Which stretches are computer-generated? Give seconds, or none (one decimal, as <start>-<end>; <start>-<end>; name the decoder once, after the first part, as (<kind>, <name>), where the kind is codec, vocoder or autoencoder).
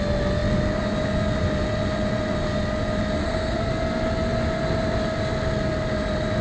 3.2-3.7 (codec, SNAC)